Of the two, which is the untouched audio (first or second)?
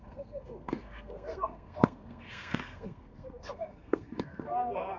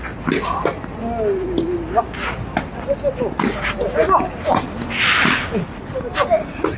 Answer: second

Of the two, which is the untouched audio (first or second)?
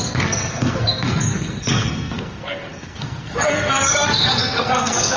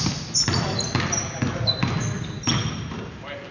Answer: second